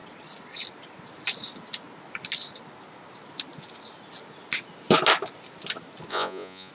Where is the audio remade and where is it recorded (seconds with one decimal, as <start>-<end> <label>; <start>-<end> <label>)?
0.0-6.1 recorded; 6.1-6.7 remade